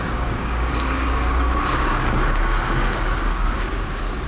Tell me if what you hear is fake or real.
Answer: fake